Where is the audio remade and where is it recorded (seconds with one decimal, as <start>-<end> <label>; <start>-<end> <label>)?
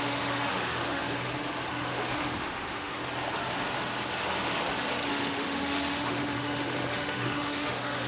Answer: 0.0-1.0 remade; 1.0-1.7 recorded; 1.7-2.9 remade; 2.9-5.1 recorded; 5.1-8.1 remade